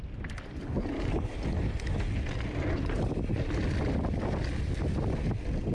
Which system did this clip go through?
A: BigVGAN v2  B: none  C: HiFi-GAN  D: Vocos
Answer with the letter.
B